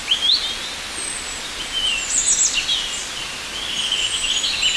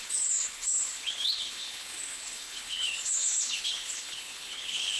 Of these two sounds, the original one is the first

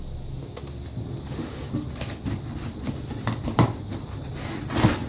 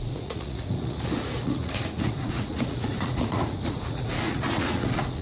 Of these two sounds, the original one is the first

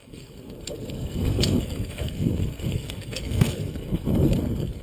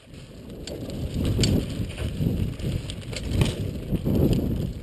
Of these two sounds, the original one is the second